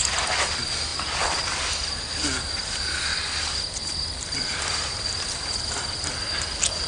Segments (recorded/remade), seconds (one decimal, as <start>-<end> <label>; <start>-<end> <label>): 0.0-0.9 recorded; 0.9-1.5 remade; 1.5-3.1 recorded; 3.1-5.5 remade; 5.5-6.9 recorded